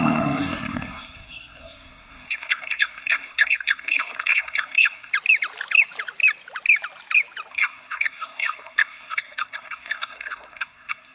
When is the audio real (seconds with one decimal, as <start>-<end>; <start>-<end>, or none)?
5.1-7.5